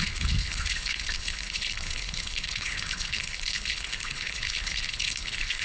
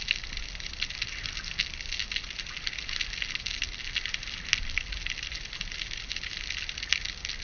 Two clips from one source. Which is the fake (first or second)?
first